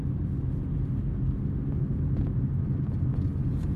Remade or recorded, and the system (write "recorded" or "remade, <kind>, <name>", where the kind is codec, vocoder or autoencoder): recorded